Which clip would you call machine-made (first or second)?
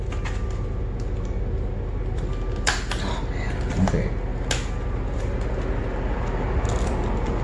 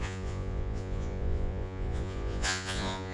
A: second